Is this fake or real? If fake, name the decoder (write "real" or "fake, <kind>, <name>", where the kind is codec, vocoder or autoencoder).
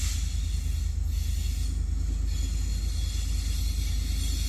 real